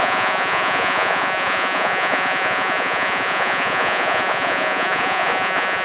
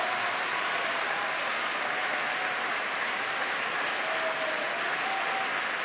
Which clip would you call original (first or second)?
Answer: second